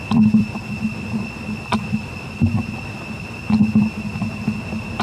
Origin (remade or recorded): recorded